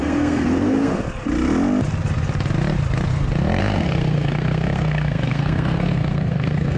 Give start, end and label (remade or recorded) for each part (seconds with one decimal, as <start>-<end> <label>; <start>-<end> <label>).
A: 0.0-1.0 remade; 1.0-3.6 recorded; 3.6-6.8 remade